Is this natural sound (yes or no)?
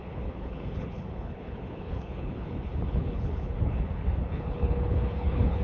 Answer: no